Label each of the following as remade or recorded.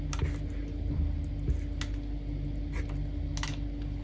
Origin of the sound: recorded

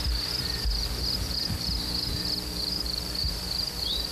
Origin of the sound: remade